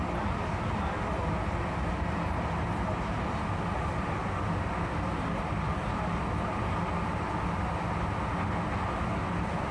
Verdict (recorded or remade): recorded